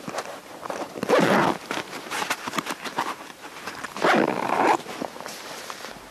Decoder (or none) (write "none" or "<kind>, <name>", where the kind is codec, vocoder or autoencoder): vocoder, BigVGAN v2